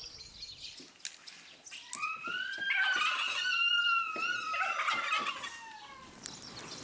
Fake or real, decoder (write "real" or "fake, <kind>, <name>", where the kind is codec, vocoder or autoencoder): real